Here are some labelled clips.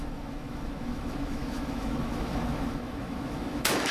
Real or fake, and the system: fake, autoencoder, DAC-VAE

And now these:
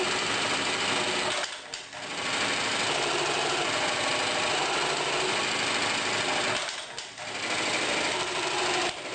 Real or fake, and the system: real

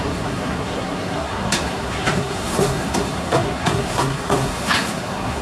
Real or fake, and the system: fake, codec, SNAC